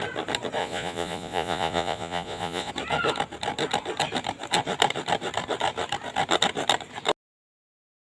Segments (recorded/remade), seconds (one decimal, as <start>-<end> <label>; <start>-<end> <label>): 0.0-0.6 recorded; 0.6-2.7 remade; 2.7-8.1 recorded